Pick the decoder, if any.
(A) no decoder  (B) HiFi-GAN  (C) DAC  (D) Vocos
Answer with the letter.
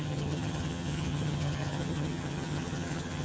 B